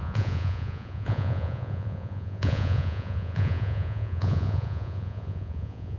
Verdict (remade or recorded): remade